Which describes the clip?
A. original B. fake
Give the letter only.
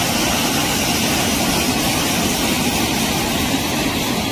A